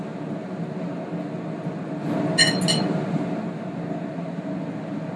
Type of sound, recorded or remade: recorded